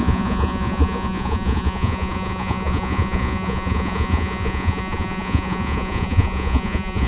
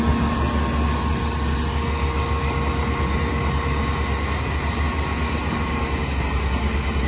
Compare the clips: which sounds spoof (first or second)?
first